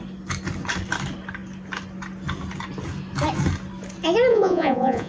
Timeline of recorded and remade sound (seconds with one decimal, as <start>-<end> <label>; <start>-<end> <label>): 0.0-4.3 recorded; 4.3-5.1 remade